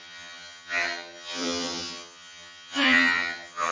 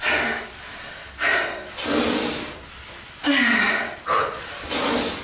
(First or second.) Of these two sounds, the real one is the second